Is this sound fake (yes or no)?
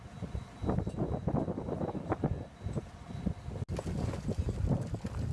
no